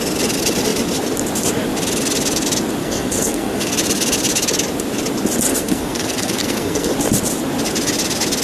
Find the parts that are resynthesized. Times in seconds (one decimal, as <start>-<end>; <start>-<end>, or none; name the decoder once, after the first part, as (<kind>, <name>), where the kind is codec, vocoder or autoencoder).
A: 2.8-3.7 (codec, SNAC); 5.5-6.9

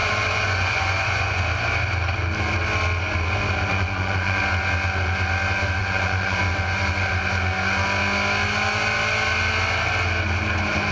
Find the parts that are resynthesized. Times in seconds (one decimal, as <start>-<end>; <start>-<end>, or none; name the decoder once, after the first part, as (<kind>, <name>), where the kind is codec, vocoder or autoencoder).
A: 0.0-1.4 (vocoder, Vocos); 3.7-4.4; 5.8-6.4

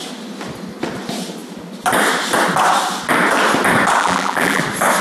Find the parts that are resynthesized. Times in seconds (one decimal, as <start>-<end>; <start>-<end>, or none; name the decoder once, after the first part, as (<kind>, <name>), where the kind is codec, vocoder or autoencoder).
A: 4.0-4.6 (vocoder, BigVGAN v2)